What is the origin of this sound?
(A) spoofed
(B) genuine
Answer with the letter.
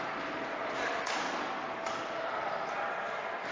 B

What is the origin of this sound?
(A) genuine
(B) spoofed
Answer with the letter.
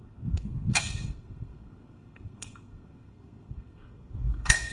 B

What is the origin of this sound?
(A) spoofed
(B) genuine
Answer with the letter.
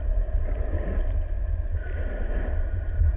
B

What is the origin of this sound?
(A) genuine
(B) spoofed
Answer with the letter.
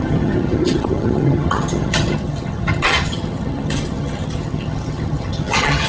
B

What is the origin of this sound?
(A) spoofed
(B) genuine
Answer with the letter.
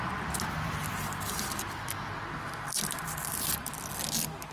B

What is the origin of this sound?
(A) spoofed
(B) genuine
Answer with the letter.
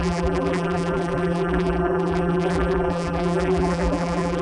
A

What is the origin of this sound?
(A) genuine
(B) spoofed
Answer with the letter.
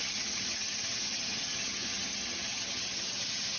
B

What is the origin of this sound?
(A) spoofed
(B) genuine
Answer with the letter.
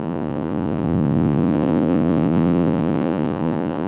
A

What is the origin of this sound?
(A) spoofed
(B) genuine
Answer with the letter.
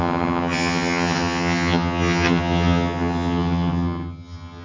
A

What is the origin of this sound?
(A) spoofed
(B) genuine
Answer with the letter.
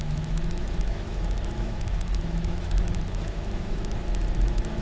A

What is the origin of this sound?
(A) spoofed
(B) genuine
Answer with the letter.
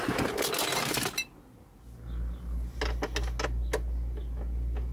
B